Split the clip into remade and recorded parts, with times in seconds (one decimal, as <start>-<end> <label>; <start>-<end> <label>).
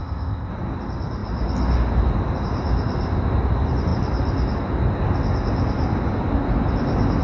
0.0-0.5 remade; 0.5-7.2 recorded